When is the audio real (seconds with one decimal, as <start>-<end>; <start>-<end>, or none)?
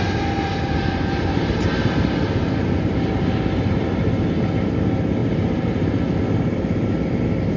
0.0-0.5; 3.8-5.2; 6.0-7.6